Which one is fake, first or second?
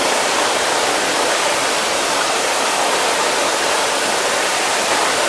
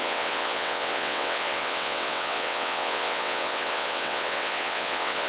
second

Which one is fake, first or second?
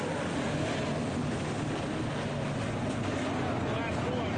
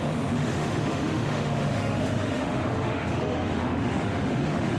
second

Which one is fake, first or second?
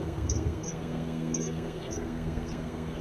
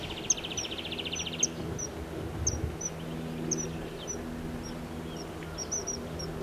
first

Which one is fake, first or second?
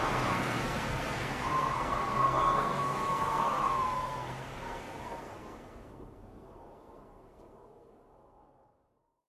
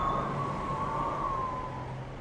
first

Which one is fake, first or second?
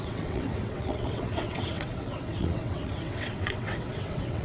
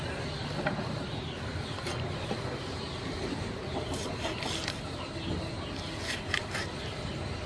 first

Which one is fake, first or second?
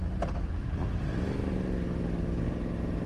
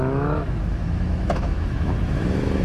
second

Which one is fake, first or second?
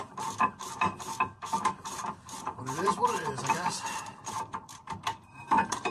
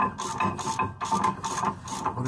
first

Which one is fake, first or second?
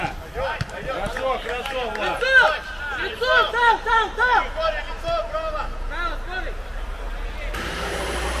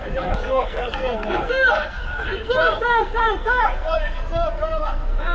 second